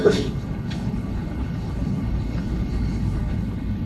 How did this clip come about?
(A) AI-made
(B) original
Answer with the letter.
A